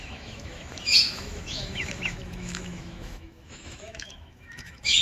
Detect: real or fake fake